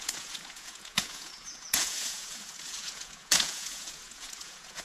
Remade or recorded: remade